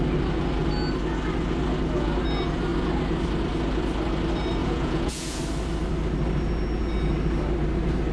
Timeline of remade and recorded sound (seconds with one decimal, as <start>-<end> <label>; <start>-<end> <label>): 0.0-4.6 recorded; 4.6-5.4 remade; 5.4-8.1 recorded

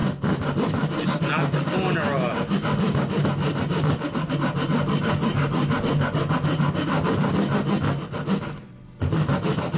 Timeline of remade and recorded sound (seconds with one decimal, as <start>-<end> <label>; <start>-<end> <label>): 0.0-9.8 recorded

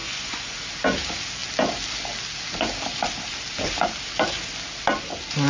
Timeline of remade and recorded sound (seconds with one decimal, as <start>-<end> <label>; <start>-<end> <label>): 0.0-0.6 remade; 0.6-5.5 recorded

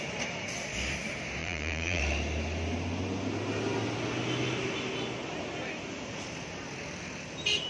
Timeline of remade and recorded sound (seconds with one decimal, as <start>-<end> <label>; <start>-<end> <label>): 0.0-1.4 recorded; 1.4-2.0 remade; 2.0-7.7 recorded

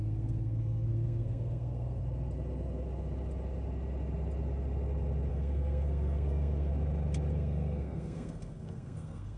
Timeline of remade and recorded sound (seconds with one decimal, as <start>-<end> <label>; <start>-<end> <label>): 0.0-2.0 remade; 2.0-5.3 recorded; 5.3-6.7 remade; 6.7-7.3 recorded; 7.3-9.4 remade